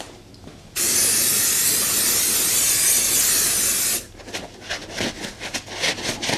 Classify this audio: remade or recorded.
recorded